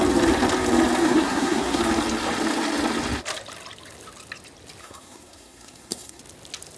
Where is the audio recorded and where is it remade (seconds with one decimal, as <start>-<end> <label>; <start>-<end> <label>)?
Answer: 0.0-1.0 recorded; 1.0-1.8 remade; 1.8-4.8 recorded; 4.8-6.2 remade; 6.2-6.8 recorded